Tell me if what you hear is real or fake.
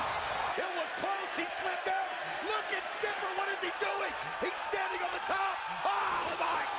real